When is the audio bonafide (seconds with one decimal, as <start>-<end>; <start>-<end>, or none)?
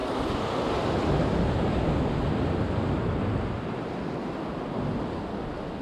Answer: 0.0-5.8